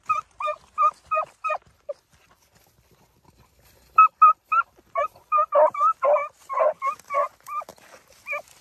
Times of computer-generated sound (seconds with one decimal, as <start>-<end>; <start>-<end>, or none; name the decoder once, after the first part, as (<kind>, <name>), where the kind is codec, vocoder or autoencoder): none